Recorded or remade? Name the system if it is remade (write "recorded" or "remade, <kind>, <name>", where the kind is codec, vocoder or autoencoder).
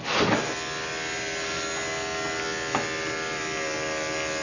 recorded